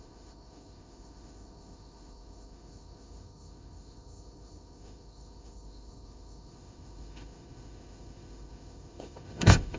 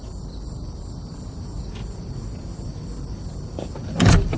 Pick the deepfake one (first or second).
first